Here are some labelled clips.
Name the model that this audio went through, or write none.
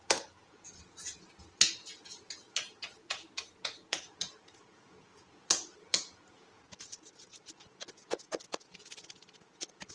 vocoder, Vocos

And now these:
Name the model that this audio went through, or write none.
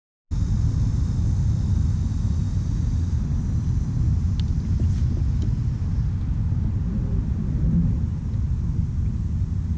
none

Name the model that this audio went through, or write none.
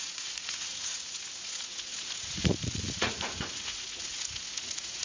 vocoder, Vocos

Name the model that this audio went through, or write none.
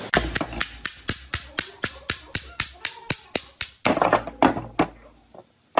none